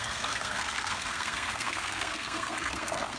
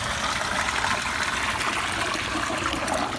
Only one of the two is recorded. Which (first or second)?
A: second